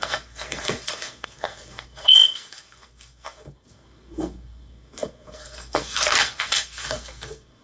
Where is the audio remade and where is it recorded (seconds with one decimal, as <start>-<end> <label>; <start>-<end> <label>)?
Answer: 0.0-7.6 remade